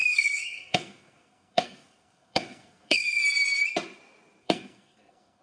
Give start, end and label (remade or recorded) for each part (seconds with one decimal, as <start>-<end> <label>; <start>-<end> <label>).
0.0-3.2 remade; 3.2-4.4 recorded; 4.4-5.4 remade